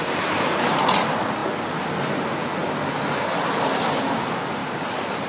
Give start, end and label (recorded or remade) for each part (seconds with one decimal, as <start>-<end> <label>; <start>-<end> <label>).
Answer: 0.0-4.6 recorded; 4.6-5.3 remade